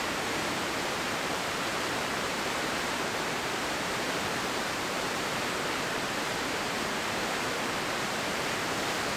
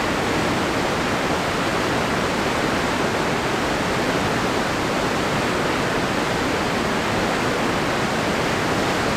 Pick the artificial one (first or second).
first